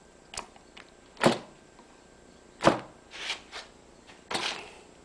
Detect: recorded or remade recorded